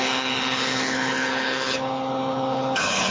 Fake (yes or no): yes